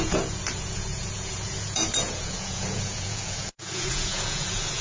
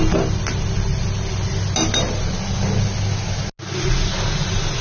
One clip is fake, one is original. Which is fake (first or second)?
first